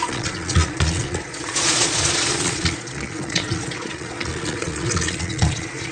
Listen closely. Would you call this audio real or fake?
fake